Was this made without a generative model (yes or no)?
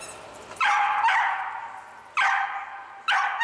yes